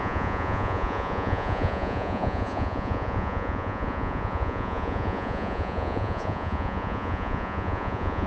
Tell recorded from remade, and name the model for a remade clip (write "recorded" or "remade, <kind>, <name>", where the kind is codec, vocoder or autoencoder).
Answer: remade, vocoder, Vocos